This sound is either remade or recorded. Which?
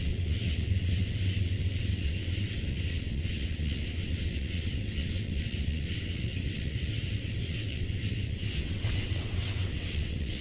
remade